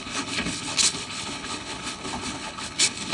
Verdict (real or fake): fake